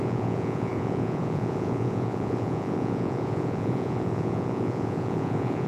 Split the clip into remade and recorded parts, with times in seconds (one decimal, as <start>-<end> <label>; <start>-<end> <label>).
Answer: 0.0-5.7 remade